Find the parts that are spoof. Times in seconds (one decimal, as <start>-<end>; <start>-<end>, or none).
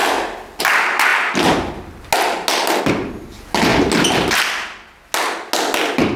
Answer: none